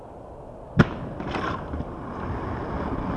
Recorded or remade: recorded